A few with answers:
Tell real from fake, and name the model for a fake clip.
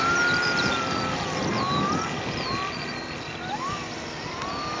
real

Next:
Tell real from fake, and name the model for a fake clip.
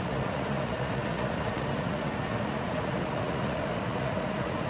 fake, vocoder, Vocos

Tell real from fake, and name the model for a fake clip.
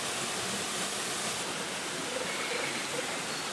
real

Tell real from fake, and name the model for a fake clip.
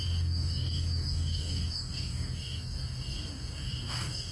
fake, codec, DAC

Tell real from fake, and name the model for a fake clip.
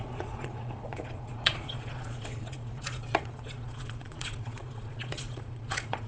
fake, vocoder, Vocos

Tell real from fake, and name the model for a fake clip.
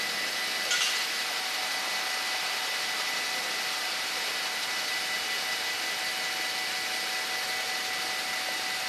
real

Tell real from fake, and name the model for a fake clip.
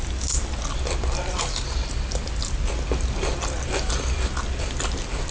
real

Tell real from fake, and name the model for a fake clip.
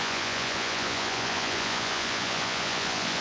fake, vocoder, Vocos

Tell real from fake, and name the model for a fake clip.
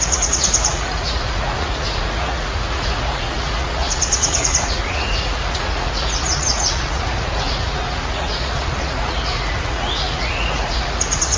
fake, vocoder, Vocos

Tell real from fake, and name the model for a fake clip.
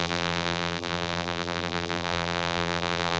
fake, vocoder, BigVGAN v2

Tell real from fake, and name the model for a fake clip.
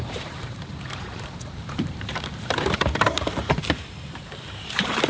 fake, vocoder, BigVGAN v2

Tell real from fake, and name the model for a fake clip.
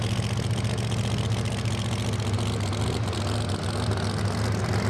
real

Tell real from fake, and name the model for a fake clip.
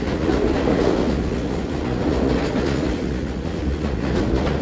fake, vocoder, Vocos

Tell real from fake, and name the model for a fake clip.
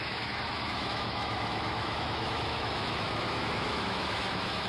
fake, autoencoder, DAC-VAE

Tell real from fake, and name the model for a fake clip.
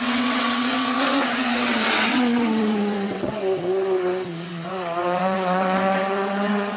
fake, vocoder, WaveNeXt